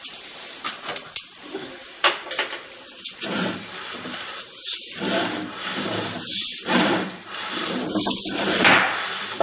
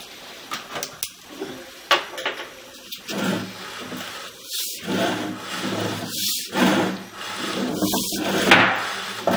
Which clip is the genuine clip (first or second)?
second